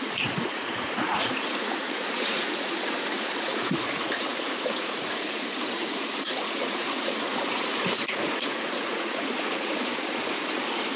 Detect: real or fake fake